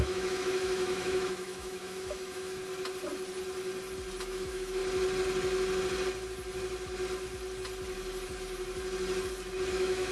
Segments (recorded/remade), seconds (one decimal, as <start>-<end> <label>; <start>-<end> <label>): 0.0-2.6 remade; 2.6-4.2 recorded; 4.2-4.8 remade; 4.8-9.7 recorded; 9.7-10.1 remade